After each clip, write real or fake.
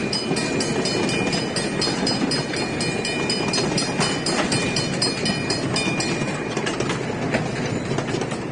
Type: real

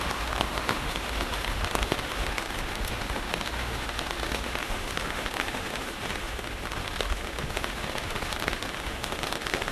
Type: fake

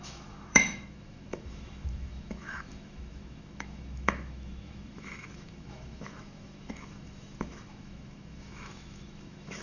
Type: fake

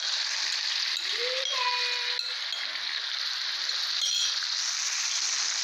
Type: real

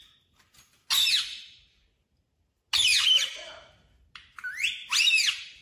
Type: real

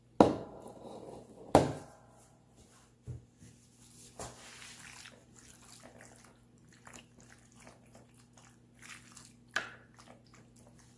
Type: real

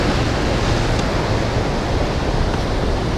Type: real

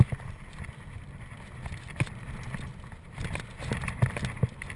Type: real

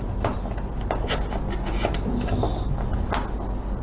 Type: real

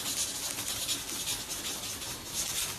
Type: real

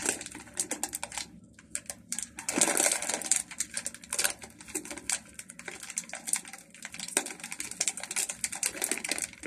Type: real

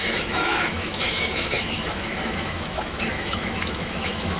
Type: fake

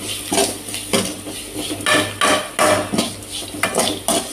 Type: real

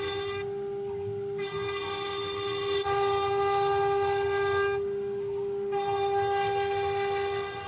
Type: real